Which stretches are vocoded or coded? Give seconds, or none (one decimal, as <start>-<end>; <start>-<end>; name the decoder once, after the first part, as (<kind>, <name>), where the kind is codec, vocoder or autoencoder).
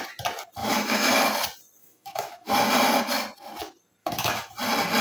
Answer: 0.6-1.1 (autoencoder, DAC-VAE); 1.8-2.5; 4.0-4.5